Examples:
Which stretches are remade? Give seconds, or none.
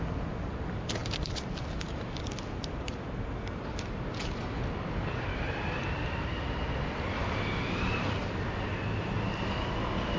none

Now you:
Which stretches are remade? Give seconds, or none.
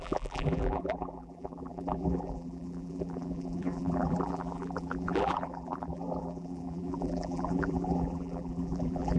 0.0-9.2 (vocoder, BigVGAN v2)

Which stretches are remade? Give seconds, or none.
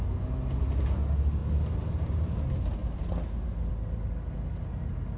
none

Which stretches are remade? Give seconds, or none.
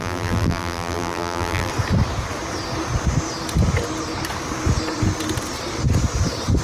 0.0-1.7 (vocoder, BigVGAN v2)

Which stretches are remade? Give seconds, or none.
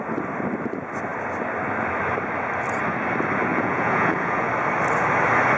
3.5-4.5 (vocoder, Vocos)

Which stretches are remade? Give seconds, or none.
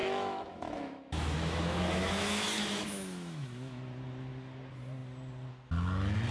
0.0-3.8 (autoencoder, DAC-VAE)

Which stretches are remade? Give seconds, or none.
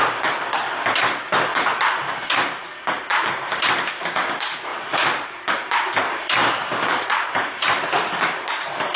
1.5-2.2 (vocoder, BigVGAN v2); 3.1-3.7; 4.7-9.0